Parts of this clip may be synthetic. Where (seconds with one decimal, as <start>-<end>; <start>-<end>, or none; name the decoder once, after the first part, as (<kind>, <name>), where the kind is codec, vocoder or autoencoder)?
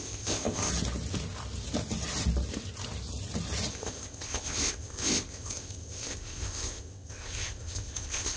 0.0-0.7 (codec, ZipCodec); 3.7-8.4